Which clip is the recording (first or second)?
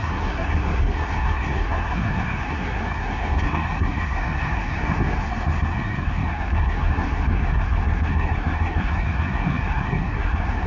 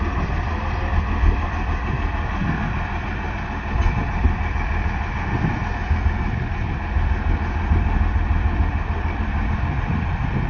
second